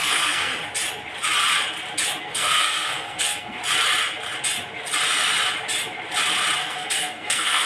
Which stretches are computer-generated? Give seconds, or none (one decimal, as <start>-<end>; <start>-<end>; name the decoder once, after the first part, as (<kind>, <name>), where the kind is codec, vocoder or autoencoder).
0.0-0.5 (codec, SNAC); 2.2-3.6; 6.6-7.7